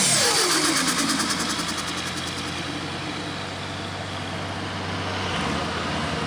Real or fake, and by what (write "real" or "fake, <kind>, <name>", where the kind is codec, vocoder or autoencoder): real